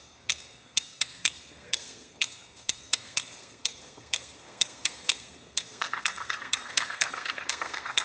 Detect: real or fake fake